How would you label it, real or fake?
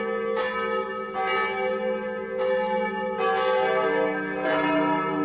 real